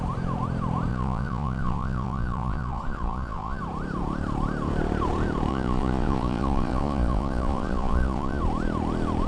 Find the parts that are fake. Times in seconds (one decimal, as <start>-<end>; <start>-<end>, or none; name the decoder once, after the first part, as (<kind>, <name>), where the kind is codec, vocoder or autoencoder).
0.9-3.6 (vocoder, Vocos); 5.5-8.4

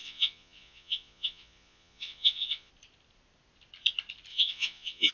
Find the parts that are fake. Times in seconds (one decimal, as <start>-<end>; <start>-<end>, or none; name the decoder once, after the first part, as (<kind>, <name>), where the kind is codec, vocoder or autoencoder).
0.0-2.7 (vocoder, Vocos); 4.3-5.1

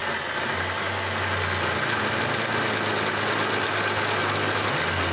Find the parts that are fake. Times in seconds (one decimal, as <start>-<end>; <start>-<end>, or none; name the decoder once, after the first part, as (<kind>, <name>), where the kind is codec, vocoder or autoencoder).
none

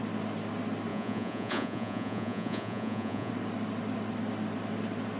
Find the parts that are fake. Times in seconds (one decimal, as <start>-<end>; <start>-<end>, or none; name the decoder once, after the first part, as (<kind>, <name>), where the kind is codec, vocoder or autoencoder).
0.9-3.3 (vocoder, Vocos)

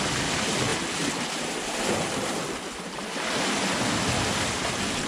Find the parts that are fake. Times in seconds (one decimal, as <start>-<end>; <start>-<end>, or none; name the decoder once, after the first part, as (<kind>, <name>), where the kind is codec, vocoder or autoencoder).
none